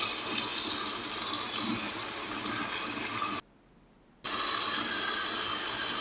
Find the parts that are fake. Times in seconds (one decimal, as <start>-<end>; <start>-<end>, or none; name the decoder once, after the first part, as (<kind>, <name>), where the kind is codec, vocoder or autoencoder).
none